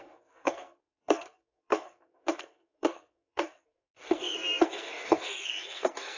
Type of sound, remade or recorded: remade